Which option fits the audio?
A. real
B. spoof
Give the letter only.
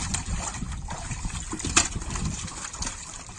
A